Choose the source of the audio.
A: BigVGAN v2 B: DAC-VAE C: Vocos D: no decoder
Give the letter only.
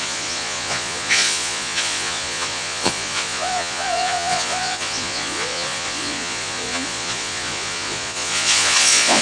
C